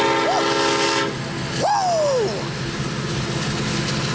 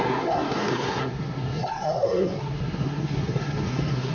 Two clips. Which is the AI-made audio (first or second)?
second